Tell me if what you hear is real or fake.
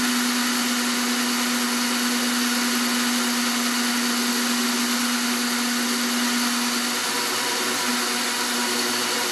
real